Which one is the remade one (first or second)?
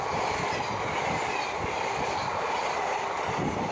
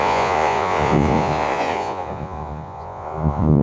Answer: second